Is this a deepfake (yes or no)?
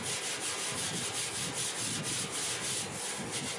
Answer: no